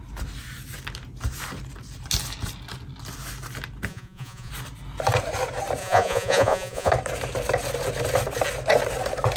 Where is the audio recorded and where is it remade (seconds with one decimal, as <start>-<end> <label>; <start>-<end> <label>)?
0.0-3.9 recorded; 3.9-4.5 remade; 4.5-5.8 recorded; 5.8-6.9 remade; 6.9-9.4 recorded